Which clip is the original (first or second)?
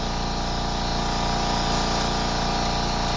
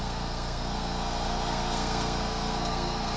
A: first